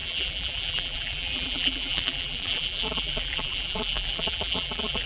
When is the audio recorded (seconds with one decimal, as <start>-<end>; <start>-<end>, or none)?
none